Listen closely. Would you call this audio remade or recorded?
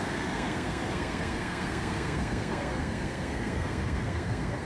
remade